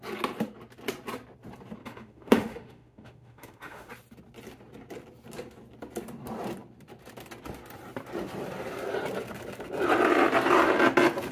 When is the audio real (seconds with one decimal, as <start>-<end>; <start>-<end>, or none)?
0.0-1.8; 3.9-11.3